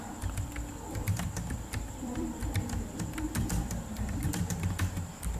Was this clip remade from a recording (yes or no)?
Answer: yes